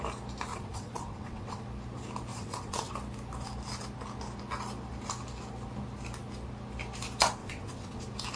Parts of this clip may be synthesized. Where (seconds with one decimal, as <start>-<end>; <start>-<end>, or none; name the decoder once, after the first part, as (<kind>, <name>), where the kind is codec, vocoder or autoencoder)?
0.5-1.6 (vocoder, WaveNeXt); 2.3-2.9; 7.4-8.0